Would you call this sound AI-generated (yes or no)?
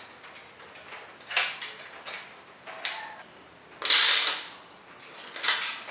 no